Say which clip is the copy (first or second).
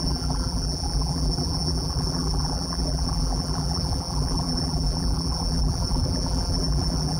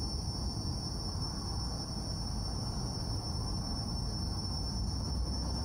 first